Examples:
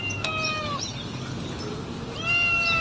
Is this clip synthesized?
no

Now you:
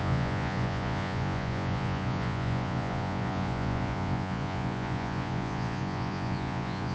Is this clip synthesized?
yes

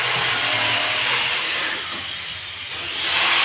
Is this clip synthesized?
no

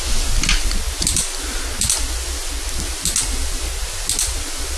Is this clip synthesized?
no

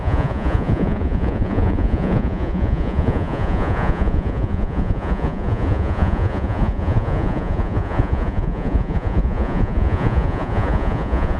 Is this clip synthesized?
yes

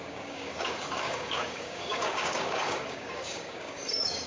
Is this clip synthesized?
yes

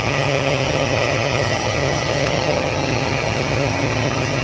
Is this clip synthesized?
yes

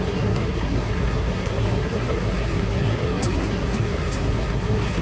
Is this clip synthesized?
yes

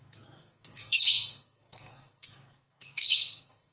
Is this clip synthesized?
yes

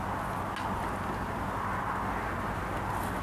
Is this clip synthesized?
no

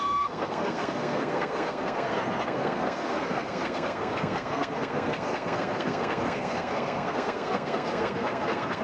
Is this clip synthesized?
yes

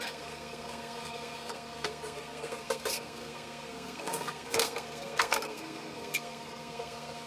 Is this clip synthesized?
yes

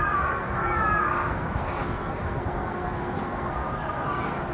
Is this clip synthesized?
yes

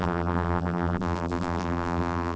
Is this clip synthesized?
yes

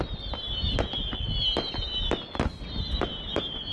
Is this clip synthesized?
no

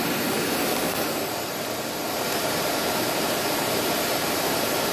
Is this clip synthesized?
yes